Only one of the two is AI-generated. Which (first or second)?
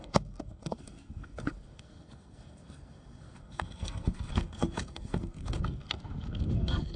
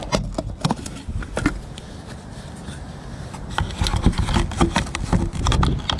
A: first